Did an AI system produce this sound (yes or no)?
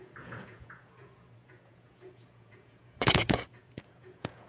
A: yes